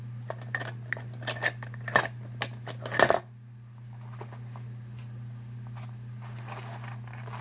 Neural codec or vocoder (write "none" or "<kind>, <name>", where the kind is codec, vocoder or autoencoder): none